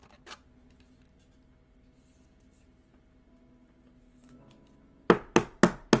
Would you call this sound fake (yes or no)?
no